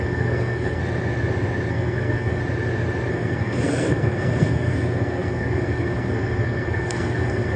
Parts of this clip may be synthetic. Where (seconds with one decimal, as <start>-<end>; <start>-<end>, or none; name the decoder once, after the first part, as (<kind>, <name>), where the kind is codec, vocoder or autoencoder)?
0.0-0.8 (codec, SNAC); 1.7-2.4; 3.1-7.6